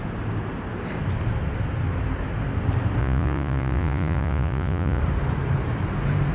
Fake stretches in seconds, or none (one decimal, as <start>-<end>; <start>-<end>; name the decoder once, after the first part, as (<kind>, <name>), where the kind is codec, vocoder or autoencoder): 3.0-5.0 (vocoder, Vocos)